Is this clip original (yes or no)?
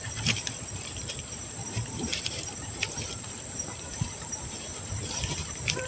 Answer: no